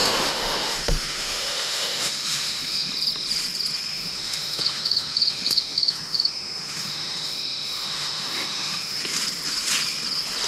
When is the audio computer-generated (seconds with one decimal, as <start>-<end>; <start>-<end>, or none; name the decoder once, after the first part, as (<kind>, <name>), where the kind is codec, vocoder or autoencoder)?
0.0-2.9 (autoencoder, DAC-VAE); 3.9-9.0